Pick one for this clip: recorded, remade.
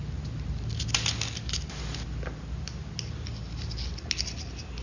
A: recorded